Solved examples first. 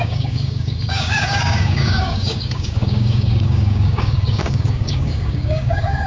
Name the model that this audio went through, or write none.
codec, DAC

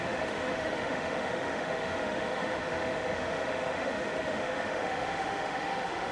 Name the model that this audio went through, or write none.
autoencoder, DAC-VAE